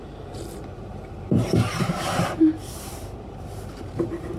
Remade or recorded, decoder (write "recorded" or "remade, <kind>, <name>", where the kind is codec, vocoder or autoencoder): remade, vocoder, BigVGAN v2